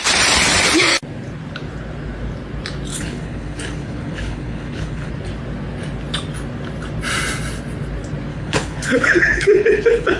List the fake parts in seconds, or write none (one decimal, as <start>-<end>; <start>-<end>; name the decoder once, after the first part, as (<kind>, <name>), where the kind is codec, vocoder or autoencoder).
2.9-5.1 (codec, HILCodec); 8.3-10.2